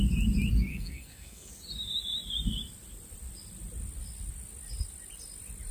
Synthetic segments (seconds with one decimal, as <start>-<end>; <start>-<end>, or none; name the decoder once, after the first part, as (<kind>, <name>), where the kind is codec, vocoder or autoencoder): 0.7-1.5 (codec, SNAC)